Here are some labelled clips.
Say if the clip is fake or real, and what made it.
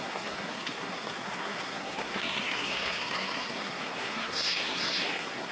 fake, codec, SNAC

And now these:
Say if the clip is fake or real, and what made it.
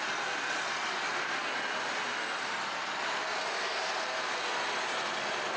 real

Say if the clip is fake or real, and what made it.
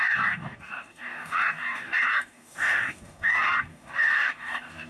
fake, codec, DAC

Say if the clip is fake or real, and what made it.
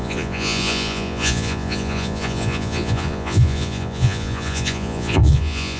fake, vocoder, Vocos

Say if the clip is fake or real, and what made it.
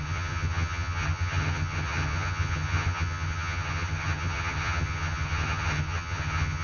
fake, vocoder, HiFi-GAN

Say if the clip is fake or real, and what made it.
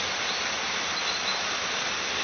real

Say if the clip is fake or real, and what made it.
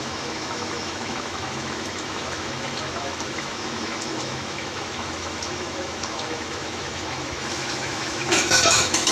fake, autoencoder, DAC-VAE